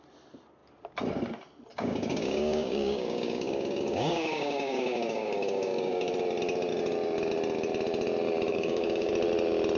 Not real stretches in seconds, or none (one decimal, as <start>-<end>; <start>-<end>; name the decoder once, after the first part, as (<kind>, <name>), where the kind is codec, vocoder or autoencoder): 1.7-6.1 (codec, DAC); 8.5-9.1